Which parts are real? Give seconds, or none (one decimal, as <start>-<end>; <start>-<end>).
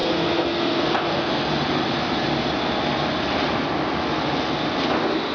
1.4-5.3